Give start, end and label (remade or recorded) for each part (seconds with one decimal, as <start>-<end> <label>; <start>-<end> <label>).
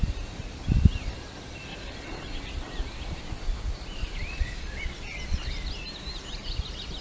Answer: 0.0-1.7 recorded; 1.7-2.4 remade; 2.4-4.0 recorded; 4.0-5.7 remade; 5.7-7.0 recorded